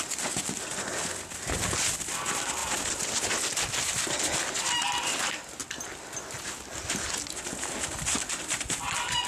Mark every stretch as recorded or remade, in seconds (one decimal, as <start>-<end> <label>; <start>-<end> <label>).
0.0-9.3 recorded